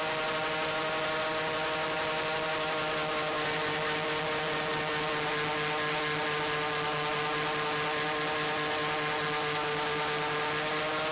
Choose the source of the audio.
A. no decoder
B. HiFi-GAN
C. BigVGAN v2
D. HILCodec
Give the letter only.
A